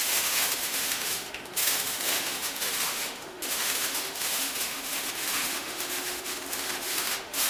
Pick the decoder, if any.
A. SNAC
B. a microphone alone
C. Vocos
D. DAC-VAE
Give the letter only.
D